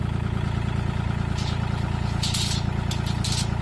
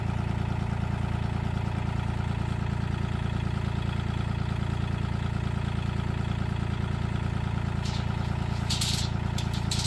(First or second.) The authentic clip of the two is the second